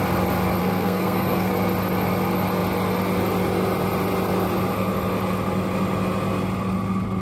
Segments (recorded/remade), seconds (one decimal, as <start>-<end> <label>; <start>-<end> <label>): 0.0-0.6 recorded; 0.6-1.5 remade; 1.5-7.2 recorded